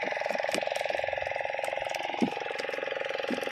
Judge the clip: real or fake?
real